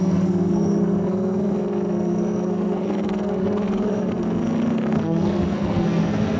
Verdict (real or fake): fake